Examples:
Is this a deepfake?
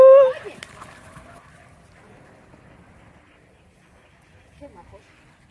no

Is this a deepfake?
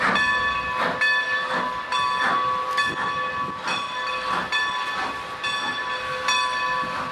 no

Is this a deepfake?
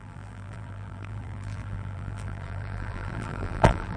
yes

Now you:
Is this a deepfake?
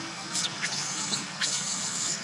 yes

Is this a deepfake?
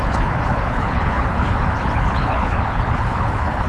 yes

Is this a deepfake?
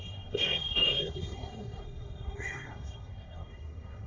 yes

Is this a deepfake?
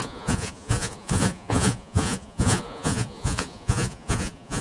yes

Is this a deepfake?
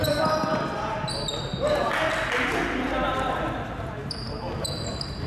no